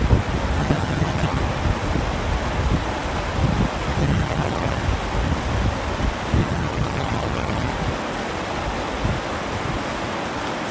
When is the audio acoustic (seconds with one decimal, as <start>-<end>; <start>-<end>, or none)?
0.0-0.6; 1.4-4.0; 4.8-6.4; 7.7-10.7